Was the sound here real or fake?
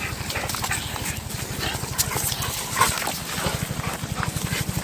real